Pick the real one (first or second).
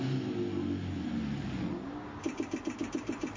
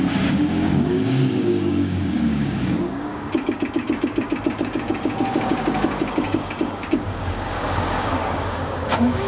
first